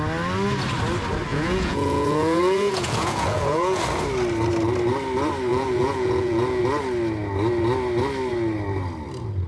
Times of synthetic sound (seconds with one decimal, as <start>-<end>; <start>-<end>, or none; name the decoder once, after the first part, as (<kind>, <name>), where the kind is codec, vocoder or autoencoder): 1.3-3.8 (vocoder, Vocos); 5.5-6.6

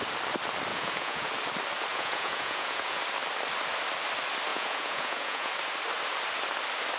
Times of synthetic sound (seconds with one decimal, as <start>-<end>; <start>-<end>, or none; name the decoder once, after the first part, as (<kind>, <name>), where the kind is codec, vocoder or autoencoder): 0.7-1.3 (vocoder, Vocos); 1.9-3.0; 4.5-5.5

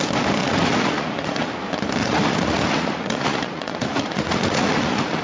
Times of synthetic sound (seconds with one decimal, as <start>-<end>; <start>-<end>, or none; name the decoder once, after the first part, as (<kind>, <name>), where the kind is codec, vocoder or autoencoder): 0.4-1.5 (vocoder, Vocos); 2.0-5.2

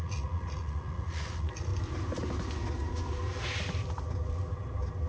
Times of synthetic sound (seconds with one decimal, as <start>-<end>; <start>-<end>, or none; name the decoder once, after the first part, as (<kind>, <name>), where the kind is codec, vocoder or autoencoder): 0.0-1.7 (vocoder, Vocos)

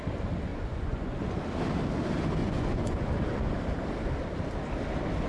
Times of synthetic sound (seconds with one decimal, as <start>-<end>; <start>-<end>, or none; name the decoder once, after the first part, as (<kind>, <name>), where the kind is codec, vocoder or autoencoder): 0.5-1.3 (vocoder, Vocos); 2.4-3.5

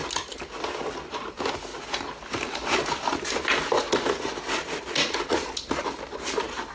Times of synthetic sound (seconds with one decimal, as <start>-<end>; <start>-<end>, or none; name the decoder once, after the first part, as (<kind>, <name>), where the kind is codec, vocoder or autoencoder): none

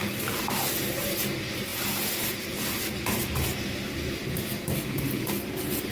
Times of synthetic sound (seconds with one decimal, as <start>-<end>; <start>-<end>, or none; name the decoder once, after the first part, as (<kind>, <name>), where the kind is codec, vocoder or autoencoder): none